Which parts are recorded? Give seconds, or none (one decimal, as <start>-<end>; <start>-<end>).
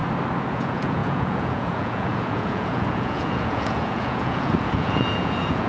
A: 0.0-0.5